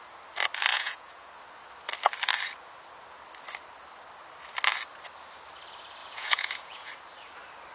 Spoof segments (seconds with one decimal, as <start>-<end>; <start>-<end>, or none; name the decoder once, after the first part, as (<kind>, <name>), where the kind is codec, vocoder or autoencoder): 0.7-1.3 (vocoder, Vocos); 6.0-6.9